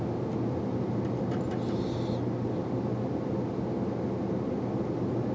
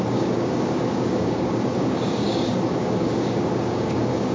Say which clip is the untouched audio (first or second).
first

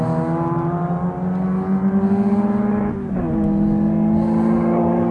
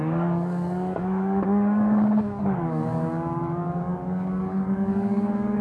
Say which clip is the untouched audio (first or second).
first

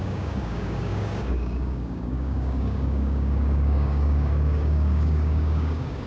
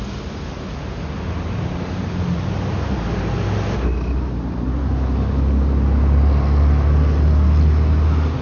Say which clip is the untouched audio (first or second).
second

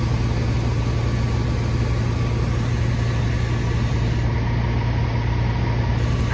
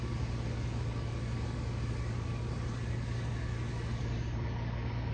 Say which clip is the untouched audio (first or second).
first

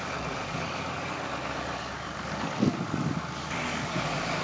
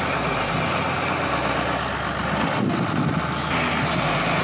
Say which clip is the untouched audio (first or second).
second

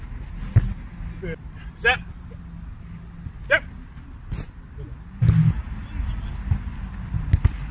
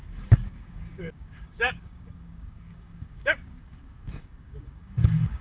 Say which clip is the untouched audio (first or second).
first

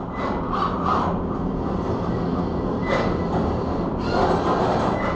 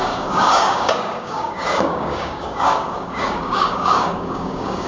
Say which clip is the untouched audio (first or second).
first